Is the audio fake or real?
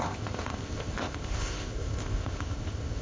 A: fake